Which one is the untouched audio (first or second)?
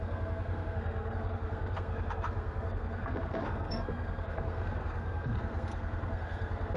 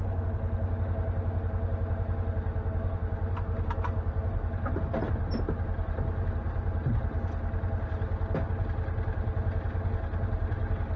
second